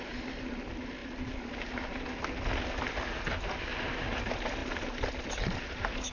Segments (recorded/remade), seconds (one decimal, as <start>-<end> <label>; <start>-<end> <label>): 0.0-6.1 recorded